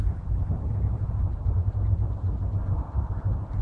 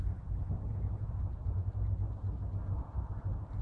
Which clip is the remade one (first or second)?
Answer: first